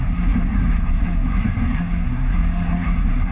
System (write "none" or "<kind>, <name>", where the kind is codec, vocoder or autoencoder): codec, SNAC